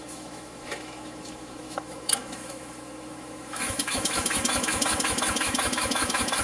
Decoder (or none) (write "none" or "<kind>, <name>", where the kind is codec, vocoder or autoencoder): autoencoder, DAC-VAE